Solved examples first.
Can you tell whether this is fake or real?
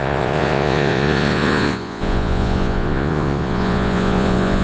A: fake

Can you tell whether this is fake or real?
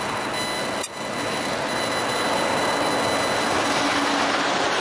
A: real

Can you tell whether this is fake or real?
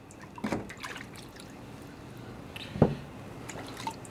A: real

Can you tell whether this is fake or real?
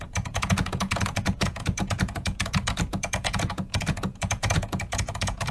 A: fake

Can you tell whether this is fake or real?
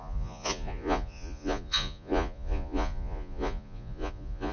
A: fake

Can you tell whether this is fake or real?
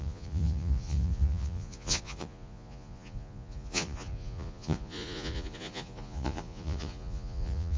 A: fake